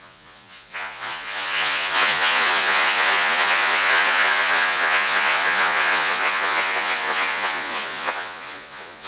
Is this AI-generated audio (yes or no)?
yes